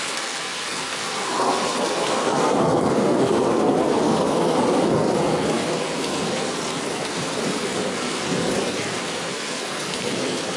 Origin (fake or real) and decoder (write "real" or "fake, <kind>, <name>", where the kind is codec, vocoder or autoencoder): fake, codec, SNAC